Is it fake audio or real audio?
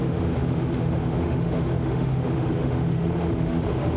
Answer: fake